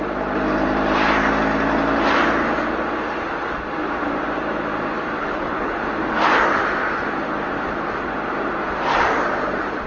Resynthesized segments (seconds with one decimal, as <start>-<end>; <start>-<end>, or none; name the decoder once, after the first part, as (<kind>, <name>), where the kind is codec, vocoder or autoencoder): 5.2-5.8 (codec, HILCodec)